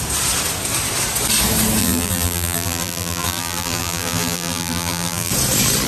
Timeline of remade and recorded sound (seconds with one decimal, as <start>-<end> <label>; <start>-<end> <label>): 0.0-1.8 recorded; 1.8-5.3 remade; 5.3-5.9 recorded